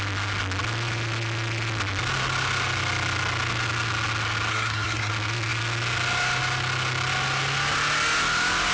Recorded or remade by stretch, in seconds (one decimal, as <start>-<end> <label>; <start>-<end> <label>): 0.0-4.5 recorded; 4.5-5.1 remade; 5.1-8.7 recorded